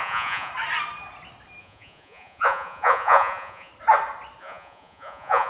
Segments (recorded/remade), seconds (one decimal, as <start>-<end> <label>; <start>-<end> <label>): 0.0-0.5 remade; 0.5-1.6 recorded; 1.6-3.7 remade; 3.7-4.4 recorded; 4.4-5.5 remade